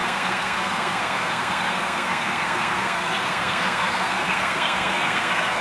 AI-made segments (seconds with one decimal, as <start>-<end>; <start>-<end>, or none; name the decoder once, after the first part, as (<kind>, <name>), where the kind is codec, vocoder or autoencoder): 0.0-5.6 (codec, SNAC)